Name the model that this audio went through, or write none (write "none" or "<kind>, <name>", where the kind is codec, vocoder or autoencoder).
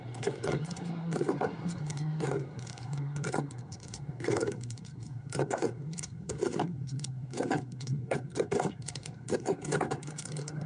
codec, SNAC